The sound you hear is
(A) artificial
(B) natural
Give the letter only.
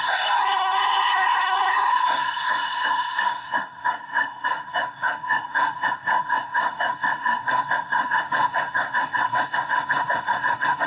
A